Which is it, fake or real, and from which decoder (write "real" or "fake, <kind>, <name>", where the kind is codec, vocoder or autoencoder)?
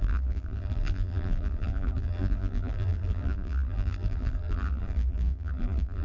fake, vocoder, BigVGAN v2